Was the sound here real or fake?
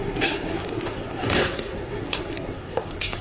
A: fake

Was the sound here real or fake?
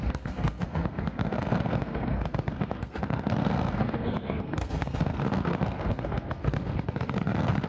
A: fake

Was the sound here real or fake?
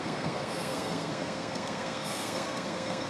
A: fake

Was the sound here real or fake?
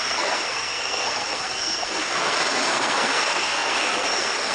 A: fake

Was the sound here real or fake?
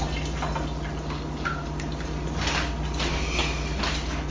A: real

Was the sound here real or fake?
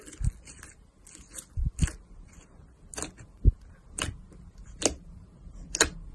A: real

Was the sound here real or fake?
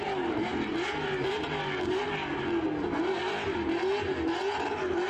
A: real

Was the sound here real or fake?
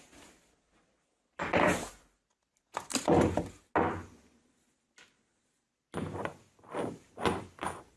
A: real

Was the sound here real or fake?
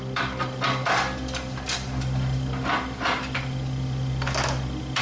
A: real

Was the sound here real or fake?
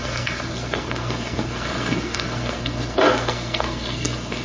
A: fake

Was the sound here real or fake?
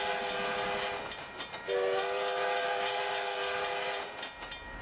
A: real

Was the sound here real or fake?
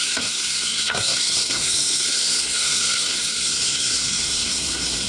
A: fake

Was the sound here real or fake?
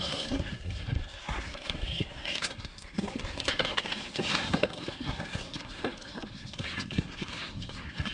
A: fake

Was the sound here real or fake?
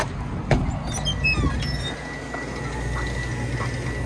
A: real